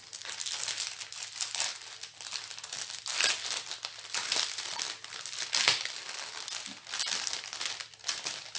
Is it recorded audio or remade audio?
recorded